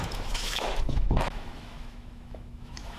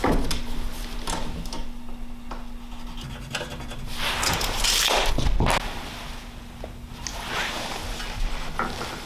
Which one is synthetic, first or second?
first